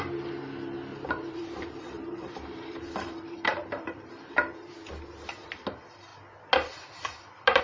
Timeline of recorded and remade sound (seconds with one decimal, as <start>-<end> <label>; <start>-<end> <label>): 0.0-0.9 recorded; 0.9-4.9 remade; 4.9-7.6 recorded